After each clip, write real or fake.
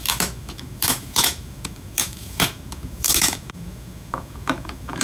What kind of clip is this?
fake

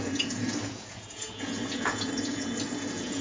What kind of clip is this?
fake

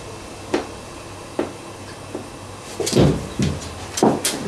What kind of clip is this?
real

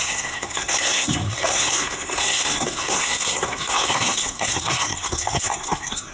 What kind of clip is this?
fake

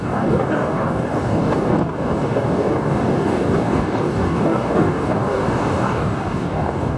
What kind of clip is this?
fake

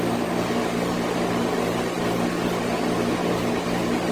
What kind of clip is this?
real